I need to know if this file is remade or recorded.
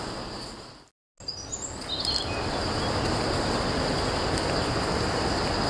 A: recorded